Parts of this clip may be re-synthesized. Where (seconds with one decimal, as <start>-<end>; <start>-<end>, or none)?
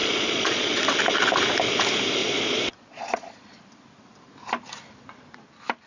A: 0.0-0.8; 2.2-3.6